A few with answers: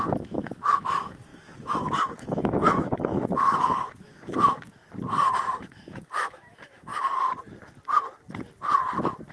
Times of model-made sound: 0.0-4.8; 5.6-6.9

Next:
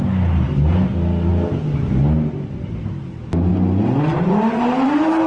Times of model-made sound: none

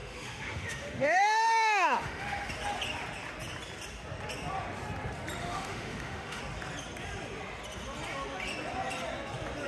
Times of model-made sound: 0.0-2.5; 5.4-6.4

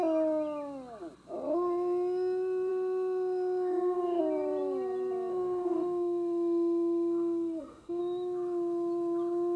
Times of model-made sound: 2.7-4.2; 5.3-8.0